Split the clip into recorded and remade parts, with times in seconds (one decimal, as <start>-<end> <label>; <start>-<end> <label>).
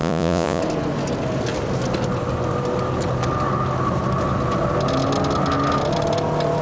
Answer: 0.0-0.6 remade; 0.6-6.6 recorded